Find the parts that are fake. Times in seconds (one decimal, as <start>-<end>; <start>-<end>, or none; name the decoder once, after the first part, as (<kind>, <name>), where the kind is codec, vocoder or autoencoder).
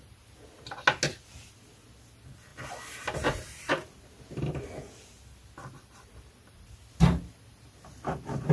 none